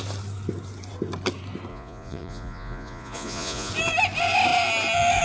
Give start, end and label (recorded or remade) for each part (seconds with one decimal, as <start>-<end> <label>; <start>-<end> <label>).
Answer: 0.0-1.7 recorded; 1.7-3.7 remade; 3.7-5.2 recorded